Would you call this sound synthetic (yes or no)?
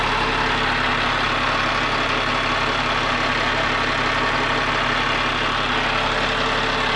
no